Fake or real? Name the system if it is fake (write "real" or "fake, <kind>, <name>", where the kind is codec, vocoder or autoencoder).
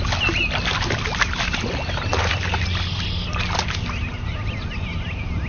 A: real